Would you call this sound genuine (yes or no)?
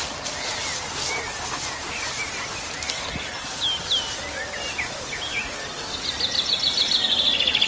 yes